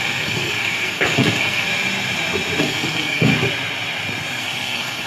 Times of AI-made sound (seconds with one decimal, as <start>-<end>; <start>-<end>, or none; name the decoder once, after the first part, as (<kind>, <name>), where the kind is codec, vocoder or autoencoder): 0.0-1.7 (codec, SNAC); 2.6-3.3; 4.4-5.1